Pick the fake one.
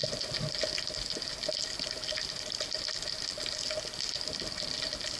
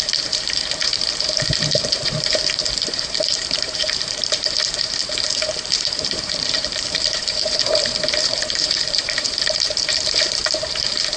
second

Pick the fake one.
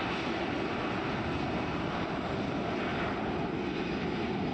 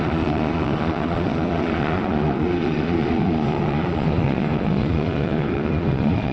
second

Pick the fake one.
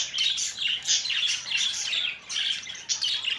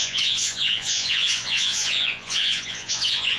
second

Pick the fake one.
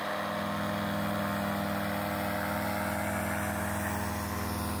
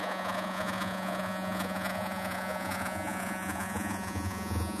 second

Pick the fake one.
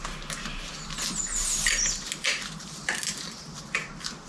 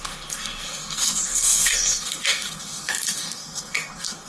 second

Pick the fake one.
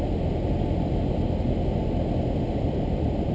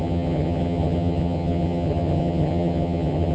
second